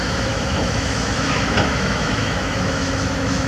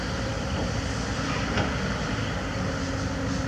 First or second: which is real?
second